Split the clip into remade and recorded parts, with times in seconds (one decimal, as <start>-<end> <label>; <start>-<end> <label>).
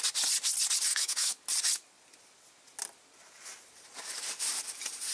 0.0-0.9 recorded; 0.9-1.4 remade; 1.4-5.1 recorded